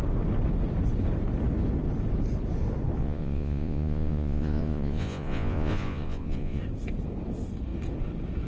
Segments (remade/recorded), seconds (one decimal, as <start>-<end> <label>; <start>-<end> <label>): 0.0-3.0 recorded; 3.0-6.6 remade; 6.6-8.5 recorded